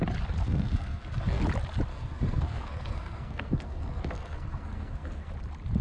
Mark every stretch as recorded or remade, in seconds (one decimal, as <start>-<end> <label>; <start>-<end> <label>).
0.0-0.4 recorded; 0.4-1.4 remade; 1.4-1.9 recorded; 1.9-5.3 remade; 5.3-5.8 recorded